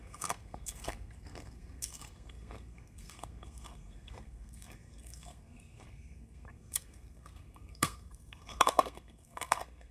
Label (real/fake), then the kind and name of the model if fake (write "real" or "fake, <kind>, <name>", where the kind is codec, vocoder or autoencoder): fake, codec, SNAC